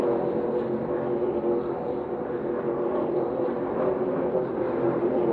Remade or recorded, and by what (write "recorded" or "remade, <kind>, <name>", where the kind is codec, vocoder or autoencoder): remade, vocoder, BigVGAN v2